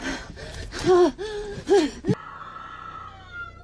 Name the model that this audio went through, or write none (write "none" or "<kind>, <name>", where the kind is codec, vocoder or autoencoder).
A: none